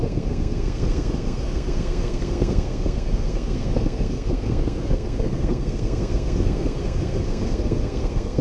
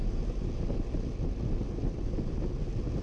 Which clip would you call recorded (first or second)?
second